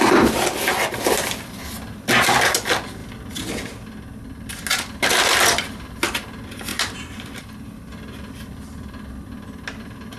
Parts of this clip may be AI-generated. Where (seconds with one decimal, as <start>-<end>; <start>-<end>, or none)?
6.7-7.3